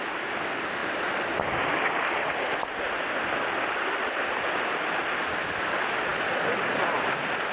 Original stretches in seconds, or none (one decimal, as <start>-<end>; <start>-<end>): 0.0-7.5